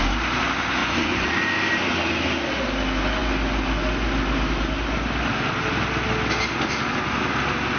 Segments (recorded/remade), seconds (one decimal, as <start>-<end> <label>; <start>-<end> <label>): 0.0-0.8 recorded; 0.8-1.4 remade; 1.4-7.8 recorded